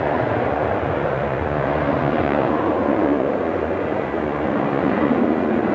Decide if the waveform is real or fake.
fake